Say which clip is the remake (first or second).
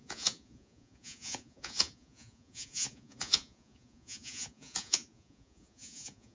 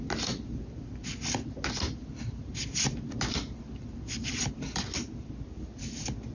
first